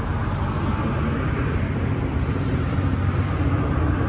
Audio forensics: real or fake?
real